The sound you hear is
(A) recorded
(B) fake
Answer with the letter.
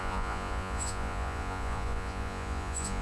B